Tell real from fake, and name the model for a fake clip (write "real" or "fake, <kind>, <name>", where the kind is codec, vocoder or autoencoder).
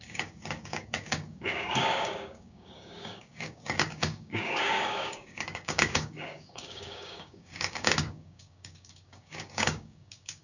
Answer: fake, codec, DAC